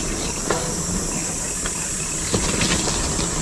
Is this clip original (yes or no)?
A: yes